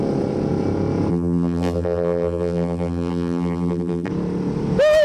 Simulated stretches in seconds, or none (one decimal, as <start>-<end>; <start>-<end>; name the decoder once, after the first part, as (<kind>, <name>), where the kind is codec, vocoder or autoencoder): 1.1-4.1 (vocoder, BigVGAN v2)